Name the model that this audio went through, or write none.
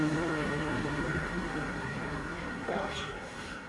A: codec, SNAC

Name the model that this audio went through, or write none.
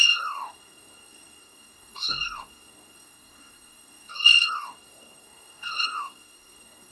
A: codec, SNAC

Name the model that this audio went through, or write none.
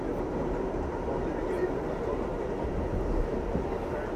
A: none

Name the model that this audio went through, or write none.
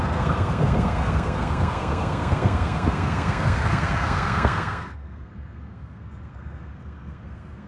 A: codec, SNAC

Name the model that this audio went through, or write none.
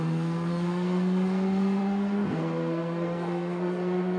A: codec, SNAC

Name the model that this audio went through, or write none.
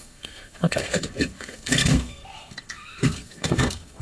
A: codec, SNAC